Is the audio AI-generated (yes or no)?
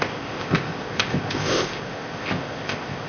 yes